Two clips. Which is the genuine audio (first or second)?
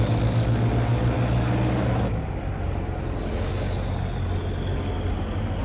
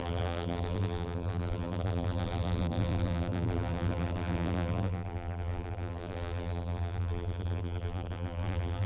first